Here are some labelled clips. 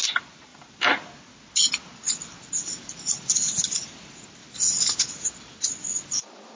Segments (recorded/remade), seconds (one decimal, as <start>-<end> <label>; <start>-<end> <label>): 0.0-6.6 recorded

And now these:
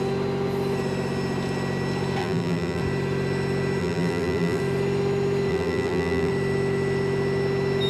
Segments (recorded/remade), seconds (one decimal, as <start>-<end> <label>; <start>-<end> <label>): 0.0-2.2 recorded; 2.2-2.8 remade; 2.8-3.8 recorded; 3.8-4.6 remade; 4.6-5.5 recorded; 5.5-6.3 remade; 6.3-7.9 recorded

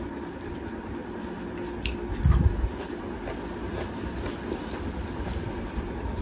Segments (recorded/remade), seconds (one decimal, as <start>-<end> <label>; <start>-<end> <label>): 0.0-1.0 remade; 1.0-4.7 recorded; 4.7-6.2 remade

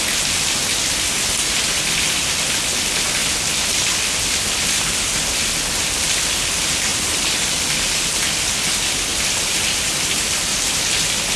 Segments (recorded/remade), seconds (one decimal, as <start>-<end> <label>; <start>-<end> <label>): 0.0-6.9 recorded; 6.9-7.6 remade; 7.6-9.1 recorded; 9.1-10.6 remade; 10.6-11.4 recorded